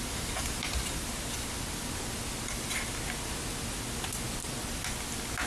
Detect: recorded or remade recorded